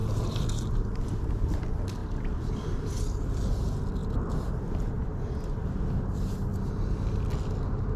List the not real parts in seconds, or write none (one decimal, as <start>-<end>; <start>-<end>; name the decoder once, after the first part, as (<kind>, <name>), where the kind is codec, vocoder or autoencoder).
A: 0.0-1.2 (vocoder, BigVGAN v2); 2.0-3.2; 4.0-4.5